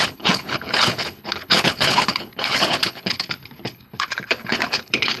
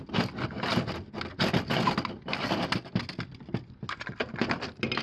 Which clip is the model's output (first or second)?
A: first